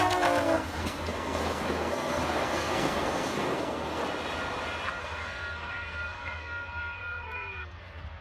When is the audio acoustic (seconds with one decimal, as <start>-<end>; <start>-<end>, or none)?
4.0-5.0